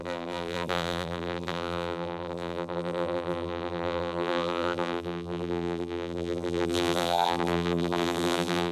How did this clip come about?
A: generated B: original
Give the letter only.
A